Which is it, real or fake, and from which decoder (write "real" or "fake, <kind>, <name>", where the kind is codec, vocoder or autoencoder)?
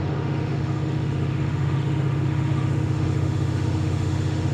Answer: fake, autoencoder, DAC-VAE